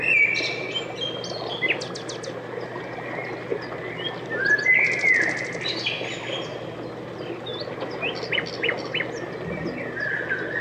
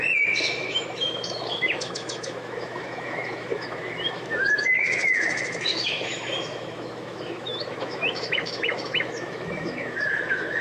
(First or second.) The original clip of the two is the first